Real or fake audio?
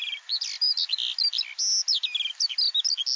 real